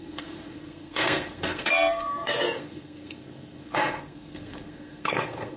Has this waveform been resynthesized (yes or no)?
yes